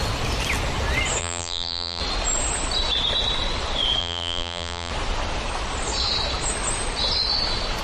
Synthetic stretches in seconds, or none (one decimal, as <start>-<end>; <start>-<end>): 1.2-2.0; 4.0-4.9